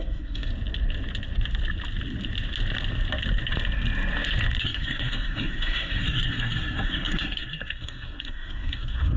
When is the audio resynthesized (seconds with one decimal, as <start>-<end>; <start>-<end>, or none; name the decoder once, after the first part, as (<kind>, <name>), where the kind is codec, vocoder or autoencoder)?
0.0-0.5 (codec, SNAC); 4.6-9.2